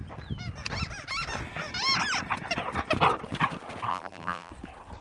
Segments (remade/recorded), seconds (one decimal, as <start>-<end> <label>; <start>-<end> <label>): 0.0-3.9 recorded; 3.9-4.5 remade; 4.5-5.0 recorded